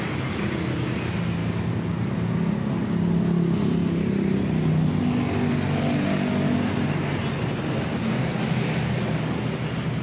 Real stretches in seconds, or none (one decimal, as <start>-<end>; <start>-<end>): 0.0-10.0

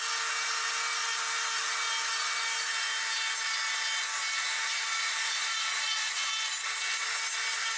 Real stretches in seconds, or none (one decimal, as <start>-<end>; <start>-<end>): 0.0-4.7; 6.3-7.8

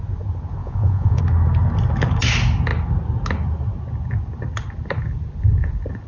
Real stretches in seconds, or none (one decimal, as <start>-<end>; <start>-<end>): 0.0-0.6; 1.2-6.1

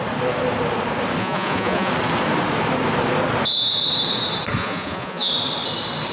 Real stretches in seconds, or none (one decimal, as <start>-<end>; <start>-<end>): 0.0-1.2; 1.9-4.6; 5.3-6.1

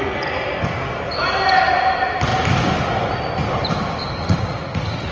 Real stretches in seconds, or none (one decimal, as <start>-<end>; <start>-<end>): 0.0-4.2

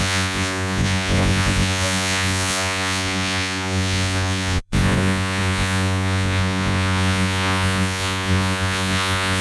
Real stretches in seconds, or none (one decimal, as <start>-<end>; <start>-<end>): none

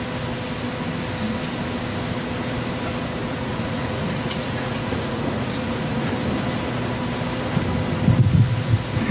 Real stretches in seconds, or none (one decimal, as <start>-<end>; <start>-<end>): 0.0-3.2; 6.1-9.1